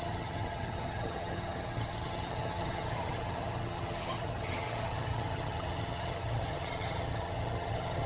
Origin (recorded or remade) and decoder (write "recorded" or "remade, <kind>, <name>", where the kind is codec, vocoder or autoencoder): remade, vocoder, HiFi-GAN